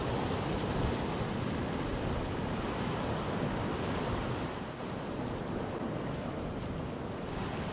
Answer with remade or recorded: recorded